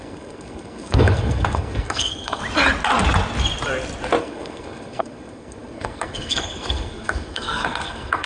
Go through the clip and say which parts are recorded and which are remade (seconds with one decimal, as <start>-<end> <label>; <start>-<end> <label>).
0.0-2.4 remade; 2.4-4.2 recorded; 4.2-8.3 remade